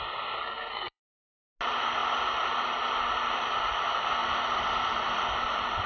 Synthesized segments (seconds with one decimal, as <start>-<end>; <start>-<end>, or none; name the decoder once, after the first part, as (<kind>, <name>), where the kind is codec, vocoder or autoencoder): 0.4-1.0 (codec, SNAC)